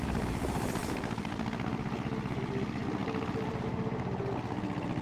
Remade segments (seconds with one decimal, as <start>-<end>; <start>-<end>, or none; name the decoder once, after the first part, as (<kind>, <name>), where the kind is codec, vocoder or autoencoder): none